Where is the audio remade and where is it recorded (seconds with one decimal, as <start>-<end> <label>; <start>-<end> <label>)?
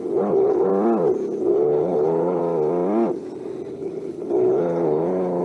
0.0-0.7 remade; 0.7-1.5 recorded; 1.5-2.4 remade; 2.4-3.7 recorded; 3.7-5.4 remade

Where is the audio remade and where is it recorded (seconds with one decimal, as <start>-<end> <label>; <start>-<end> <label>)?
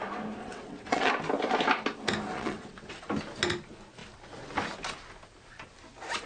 0.0-0.4 recorded; 0.4-1.1 remade; 1.1-2.3 recorded; 2.3-3.1 remade; 3.1-6.3 recorded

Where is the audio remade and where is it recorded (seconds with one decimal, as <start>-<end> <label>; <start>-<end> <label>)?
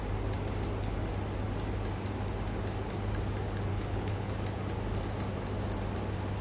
0.0-3.7 recorded; 3.7-4.3 remade; 4.3-6.4 recorded